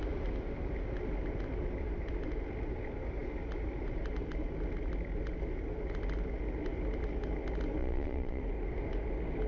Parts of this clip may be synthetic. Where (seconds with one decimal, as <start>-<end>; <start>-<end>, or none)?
7.8-8.4